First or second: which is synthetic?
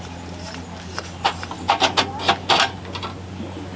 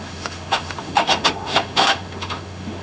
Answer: second